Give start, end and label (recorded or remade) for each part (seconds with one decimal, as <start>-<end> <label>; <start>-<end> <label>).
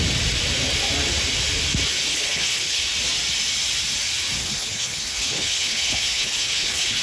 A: 0.0-2.1 recorded; 2.1-2.8 remade; 2.8-4.4 recorded; 4.4-7.0 remade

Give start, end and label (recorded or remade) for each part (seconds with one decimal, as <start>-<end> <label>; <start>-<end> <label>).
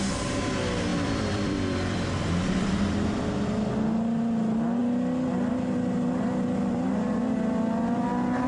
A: 0.0-0.9 recorded; 0.9-3.2 remade; 3.2-8.5 recorded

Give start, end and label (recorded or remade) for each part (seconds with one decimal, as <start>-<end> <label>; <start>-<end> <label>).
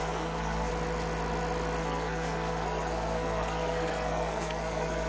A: 0.0-0.7 remade; 0.7-1.8 recorded; 1.8-5.1 remade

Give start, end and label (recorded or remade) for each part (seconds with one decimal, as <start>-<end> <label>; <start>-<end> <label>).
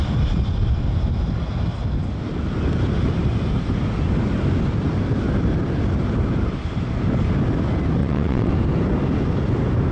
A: 0.0-8.0 recorded; 8.0-8.5 remade; 8.5-9.9 recorded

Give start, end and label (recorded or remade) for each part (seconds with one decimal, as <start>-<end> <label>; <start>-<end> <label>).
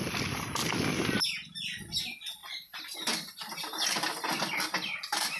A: 0.0-2.0 recorded; 2.0-5.4 remade